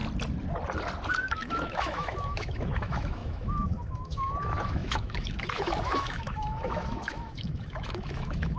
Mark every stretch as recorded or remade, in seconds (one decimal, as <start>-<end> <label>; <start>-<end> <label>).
0.0-1.1 recorded; 1.1-8.6 remade